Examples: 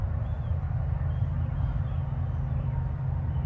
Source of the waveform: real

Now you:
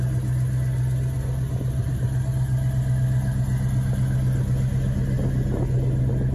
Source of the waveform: real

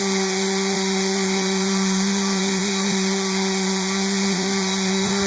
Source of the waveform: fake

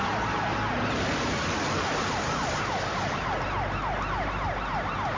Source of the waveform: real